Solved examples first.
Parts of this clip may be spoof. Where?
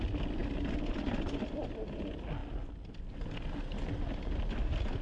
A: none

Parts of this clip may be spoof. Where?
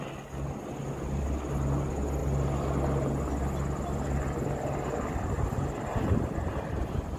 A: none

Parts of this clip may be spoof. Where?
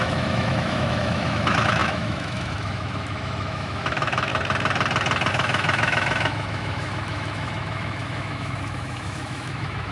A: 0.0-4.3 (autoencoder, DAC-VAE); 5.3-9.9